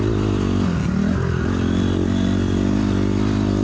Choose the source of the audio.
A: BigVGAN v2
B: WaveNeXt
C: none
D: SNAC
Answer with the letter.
C